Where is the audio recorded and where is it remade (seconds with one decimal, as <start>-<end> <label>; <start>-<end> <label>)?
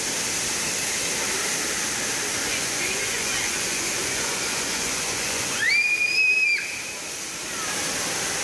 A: 0.0-2.5 recorded; 2.5-5.7 remade; 5.7-8.4 recorded